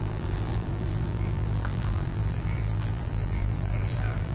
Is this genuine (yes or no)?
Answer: no